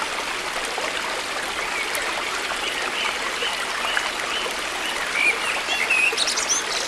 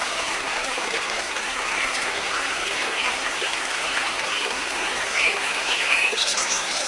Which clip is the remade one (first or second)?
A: second